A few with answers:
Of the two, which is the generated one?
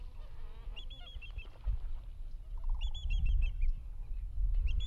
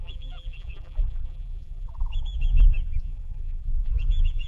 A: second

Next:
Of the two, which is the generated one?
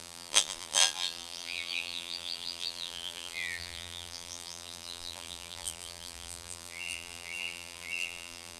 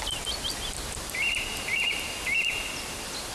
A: first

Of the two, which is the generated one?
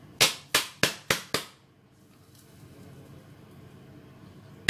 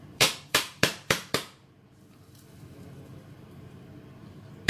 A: second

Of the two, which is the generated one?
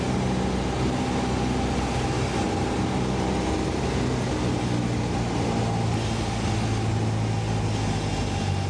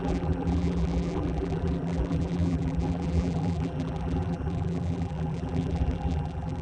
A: second